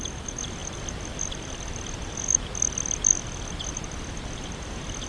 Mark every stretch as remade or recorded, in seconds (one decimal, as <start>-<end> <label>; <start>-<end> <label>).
0.0-5.1 recorded